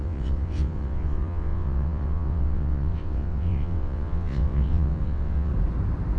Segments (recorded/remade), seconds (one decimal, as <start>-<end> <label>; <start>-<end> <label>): 0.0-5.5 remade; 5.5-6.2 recorded